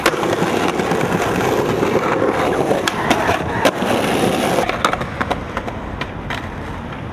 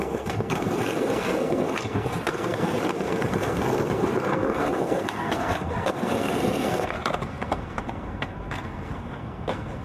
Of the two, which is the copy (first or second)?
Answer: second